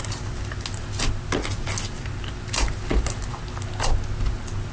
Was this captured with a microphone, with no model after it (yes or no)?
yes